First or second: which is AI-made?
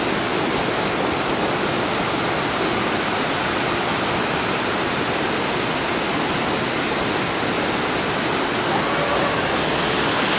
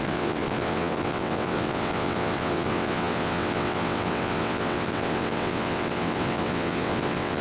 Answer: second